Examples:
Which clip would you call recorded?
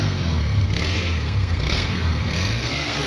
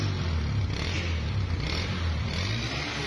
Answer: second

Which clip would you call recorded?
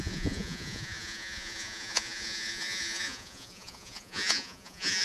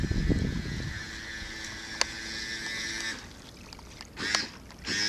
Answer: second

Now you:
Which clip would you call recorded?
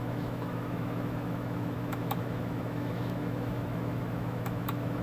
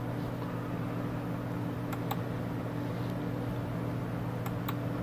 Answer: second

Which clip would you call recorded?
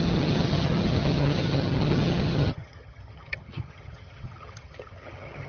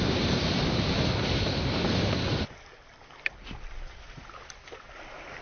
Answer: second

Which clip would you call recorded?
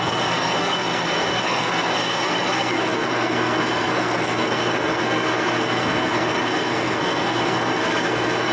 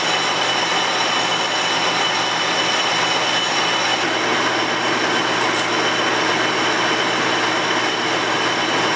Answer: second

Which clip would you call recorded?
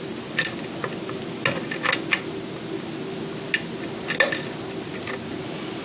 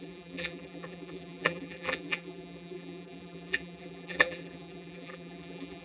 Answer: first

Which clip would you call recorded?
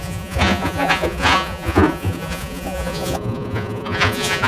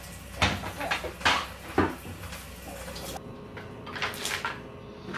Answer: second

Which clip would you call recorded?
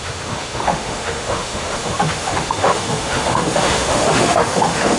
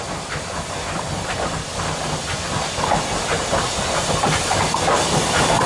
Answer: second